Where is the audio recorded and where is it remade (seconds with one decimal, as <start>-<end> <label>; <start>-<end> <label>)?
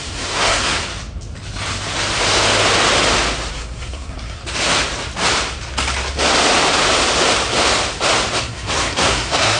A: 0.0-0.8 remade; 0.8-3.5 recorded; 3.5-4.4 remade; 4.4-8.4 recorded; 8.4-9.6 remade